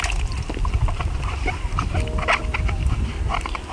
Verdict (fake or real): real